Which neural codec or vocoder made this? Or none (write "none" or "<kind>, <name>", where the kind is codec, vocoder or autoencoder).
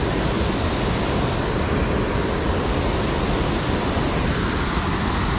none